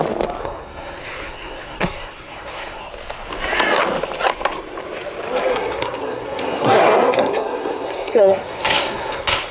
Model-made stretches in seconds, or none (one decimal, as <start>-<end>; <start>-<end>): 0.4-2.8; 5.5-9.5